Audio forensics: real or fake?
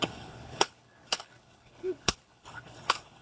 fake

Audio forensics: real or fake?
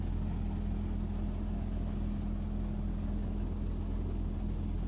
real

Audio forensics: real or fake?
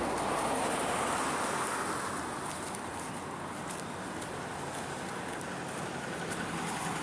real